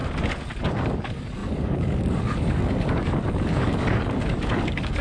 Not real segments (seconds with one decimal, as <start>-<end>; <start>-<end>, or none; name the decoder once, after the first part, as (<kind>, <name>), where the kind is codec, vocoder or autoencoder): 0.6-5.0 (codec, DAC)